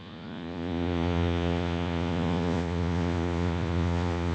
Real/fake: fake